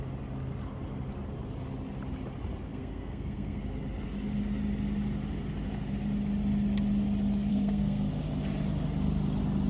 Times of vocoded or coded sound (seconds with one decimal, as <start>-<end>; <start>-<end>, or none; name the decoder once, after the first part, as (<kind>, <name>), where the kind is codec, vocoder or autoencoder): 2.7-3.6 (codec, SNAC); 7.5-8.1